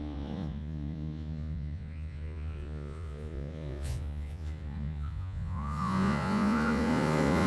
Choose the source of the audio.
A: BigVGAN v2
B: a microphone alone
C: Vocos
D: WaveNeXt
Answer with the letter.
C